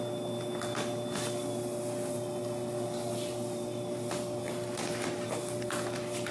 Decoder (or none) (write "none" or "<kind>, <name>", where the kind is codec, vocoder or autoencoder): none